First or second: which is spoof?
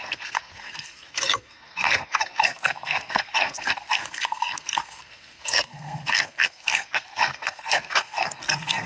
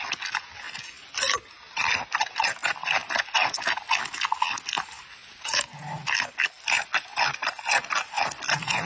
first